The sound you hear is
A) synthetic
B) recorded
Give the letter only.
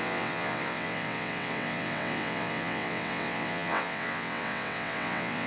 A